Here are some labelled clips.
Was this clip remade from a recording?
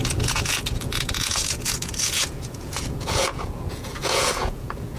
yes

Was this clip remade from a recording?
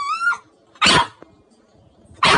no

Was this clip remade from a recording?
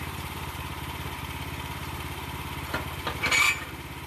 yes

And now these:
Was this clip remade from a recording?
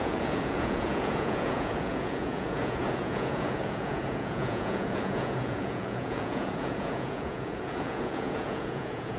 yes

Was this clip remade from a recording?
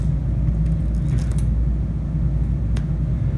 no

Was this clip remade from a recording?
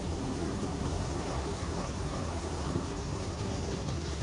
yes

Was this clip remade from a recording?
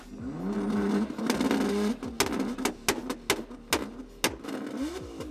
no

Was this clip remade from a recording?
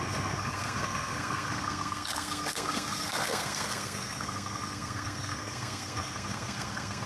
yes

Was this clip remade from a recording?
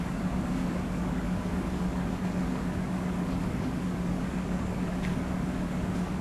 yes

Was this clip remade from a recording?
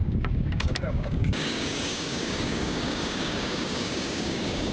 yes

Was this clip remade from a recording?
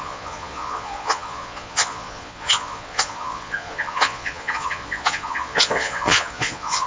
yes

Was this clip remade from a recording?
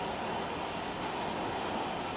no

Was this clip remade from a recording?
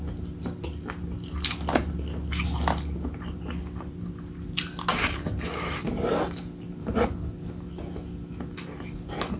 no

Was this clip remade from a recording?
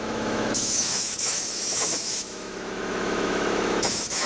yes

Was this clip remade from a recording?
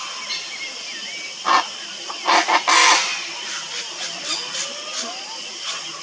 no